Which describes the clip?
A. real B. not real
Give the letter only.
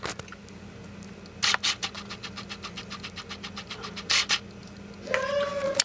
A